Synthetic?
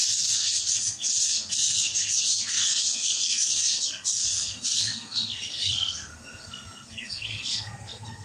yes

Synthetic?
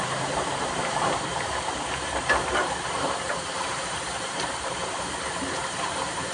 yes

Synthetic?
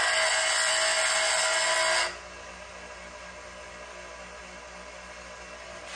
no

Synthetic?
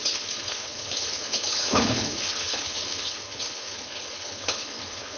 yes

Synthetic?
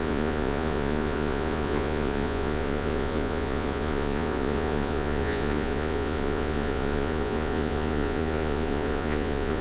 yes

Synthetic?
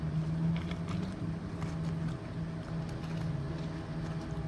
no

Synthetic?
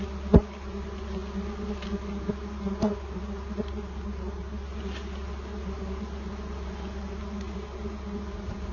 no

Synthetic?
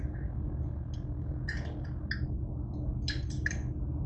no